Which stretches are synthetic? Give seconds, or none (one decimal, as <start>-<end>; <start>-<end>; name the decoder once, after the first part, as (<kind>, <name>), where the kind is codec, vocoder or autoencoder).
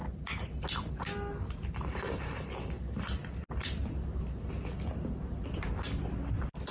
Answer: none